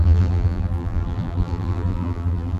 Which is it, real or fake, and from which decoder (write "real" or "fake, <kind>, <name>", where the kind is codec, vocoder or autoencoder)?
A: fake, vocoder, BigVGAN v2